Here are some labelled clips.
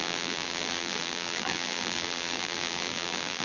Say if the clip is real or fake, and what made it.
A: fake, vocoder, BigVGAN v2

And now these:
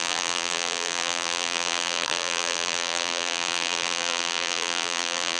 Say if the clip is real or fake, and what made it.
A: fake, vocoder, BigVGAN v2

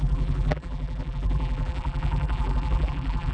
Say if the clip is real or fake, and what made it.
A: fake, vocoder, BigVGAN v2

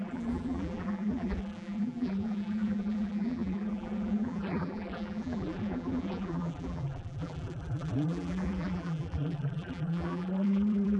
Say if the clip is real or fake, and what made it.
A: fake, vocoder, BigVGAN v2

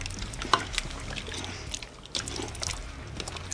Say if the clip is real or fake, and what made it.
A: real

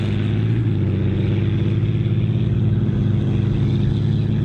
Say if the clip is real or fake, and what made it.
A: real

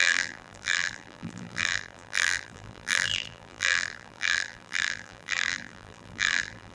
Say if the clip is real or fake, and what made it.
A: fake, vocoder, BigVGAN v2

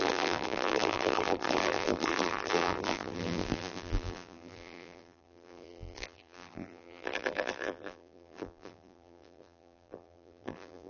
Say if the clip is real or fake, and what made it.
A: fake, vocoder, BigVGAN v2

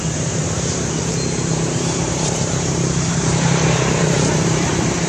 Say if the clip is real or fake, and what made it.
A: fake, vocoder, BigVGAN v2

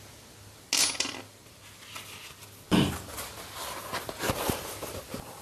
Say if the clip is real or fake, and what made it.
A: real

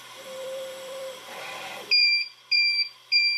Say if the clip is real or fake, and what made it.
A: fake, vocoder, BigVGAN v2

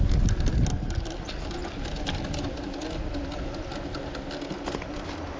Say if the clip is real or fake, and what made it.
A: real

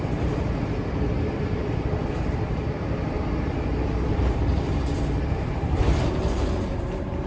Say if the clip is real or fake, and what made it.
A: fake, vocoder, BigVGAN v2